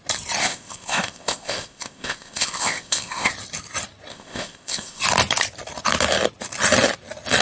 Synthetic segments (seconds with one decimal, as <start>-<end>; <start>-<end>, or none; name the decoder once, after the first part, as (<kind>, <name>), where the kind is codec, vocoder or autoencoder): 0.4-3.3 (codec, ZipCodec); 4.1-5.0

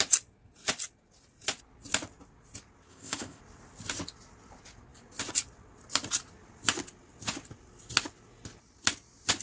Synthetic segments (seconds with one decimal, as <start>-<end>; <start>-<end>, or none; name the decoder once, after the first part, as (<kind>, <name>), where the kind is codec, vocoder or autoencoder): 2.9-3.4 (codec, ZipCodec)

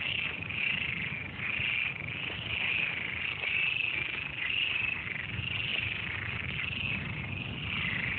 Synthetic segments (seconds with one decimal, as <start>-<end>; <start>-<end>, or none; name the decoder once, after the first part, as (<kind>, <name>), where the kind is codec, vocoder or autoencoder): none

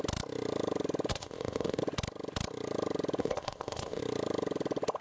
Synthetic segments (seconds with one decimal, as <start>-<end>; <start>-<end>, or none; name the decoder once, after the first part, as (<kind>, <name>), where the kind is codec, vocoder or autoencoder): 1.1-1.8 (codec, ZipCodec); 3.2-4.0

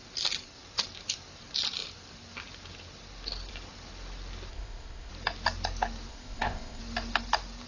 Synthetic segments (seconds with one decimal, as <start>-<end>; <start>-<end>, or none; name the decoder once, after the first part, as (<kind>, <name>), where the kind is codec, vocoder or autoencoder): 4.5-5.1 (codec, ZipCodec); 6.1-6.8

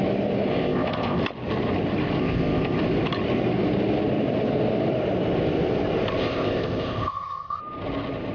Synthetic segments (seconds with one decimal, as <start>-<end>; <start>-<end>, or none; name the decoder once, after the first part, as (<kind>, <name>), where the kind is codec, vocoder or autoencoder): 0.5-1.2 (codec, ZipCodec); 2.2-2.8; 6.2-7.6